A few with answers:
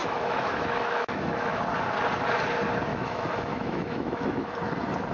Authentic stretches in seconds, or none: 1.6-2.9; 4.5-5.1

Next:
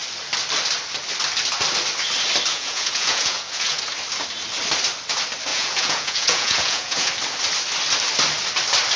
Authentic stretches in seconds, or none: 0.0-2.5; 3.8-5.5; 7.1-9.0

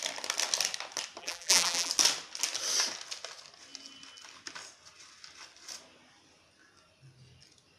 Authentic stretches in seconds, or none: 0.0-1.2; 1.9-7.8

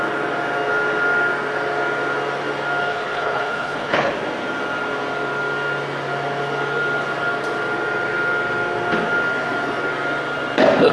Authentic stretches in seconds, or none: 0.0-2.9; 4.1-10.9